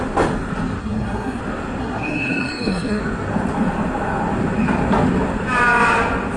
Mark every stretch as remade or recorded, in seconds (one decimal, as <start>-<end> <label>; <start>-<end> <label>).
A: 0.0-0.8 recorded; 0.8-1.4 remade; 1.4-1.8 recorded; 1.8-3.0 remade; 3.0-6.4 recorded